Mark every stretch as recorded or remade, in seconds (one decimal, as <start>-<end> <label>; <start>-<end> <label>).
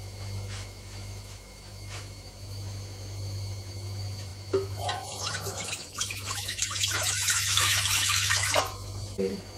0.0-9.6 remade